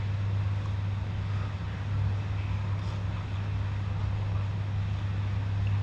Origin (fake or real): real